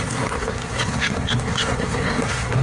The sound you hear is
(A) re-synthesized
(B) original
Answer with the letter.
A